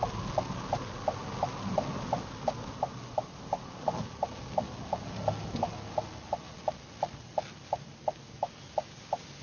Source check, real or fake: real